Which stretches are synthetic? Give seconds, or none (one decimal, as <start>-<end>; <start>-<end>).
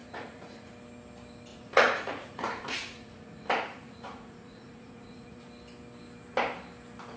0.0-0.7; 1.5-5.4